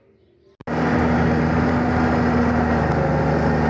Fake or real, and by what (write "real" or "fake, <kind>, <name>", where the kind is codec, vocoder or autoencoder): real